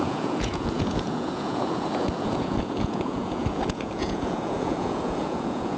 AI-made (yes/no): yes